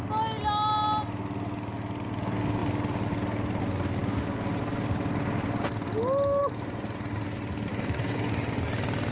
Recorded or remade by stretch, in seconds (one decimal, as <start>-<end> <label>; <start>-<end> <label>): 0.0-7.7 recorded; 7.7-8.5 remade; 8.5-9.1 recorded